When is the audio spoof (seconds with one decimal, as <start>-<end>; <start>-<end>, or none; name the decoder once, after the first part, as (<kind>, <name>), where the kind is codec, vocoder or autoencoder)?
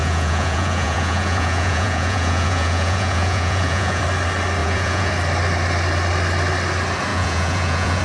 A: 0.0-4.0 (vocoder, Vocos); 4.6-5.1; 7.1-8.0